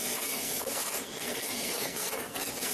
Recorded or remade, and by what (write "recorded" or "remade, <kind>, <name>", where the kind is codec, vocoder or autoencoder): remade, codec, SNAC